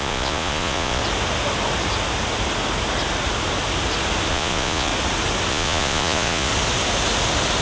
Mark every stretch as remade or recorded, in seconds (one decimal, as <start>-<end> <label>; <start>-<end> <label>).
0.0-1.0 remade; 1.0-4.3 recorded; 4.3-4.9 remade; 4.9-5.5 recorded; 5.5-6.5 remade; 6.5-7.6 recorded